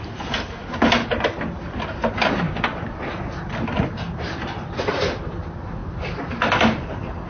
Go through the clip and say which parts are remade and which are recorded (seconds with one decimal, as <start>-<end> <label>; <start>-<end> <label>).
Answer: 0.0-7.3 recorded